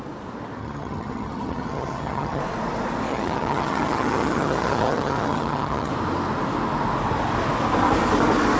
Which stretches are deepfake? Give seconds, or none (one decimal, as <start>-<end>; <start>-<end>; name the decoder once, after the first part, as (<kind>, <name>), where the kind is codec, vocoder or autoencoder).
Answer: 0.6-2.4 (vocoder, HiFi-GAN); 3.1-5.9